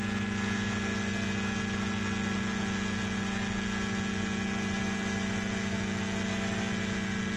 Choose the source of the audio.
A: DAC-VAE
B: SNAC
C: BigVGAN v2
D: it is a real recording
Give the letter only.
D